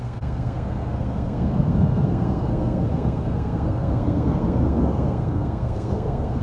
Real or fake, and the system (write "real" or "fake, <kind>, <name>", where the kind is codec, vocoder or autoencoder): fake, codec, SNAC